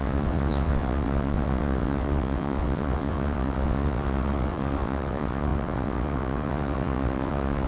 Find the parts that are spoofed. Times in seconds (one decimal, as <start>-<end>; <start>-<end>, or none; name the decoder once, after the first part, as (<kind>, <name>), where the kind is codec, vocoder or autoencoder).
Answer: 0.0-7.7 (vocoder, WaveNeXt)